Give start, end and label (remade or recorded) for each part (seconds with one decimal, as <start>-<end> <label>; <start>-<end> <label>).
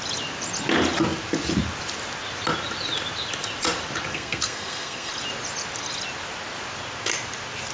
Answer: 0.0-4.1 recorded; 4.1-5.1 remade; 5.1-7.7 recorded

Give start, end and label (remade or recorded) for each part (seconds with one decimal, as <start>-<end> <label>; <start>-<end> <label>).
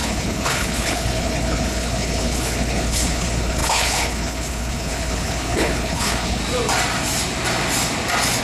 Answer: 0.0-6.4 remade; 6.4-8.4 recorded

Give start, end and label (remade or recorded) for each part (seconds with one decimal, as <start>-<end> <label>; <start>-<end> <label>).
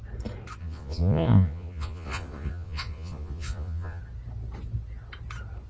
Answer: 0.0-0.6 recorded; 0.6-4.0 remade; 4.0-5.7 recorded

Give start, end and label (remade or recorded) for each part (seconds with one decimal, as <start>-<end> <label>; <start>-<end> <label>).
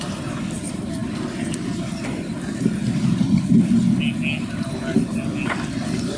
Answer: 0.0-6.2 recorded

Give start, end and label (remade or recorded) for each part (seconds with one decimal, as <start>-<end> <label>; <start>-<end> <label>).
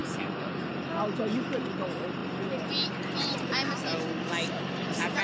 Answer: 0.0-0.7 remade; 0.7-5.2 recorded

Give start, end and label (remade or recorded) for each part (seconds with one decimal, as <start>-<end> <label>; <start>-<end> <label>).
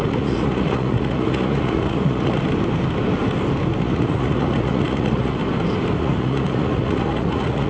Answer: 0.0-2.4 remade; 2.4-3.8 recorded; 3.8-5.4 remade; 5.4-6.0 recorded; 6.0-7.7 remade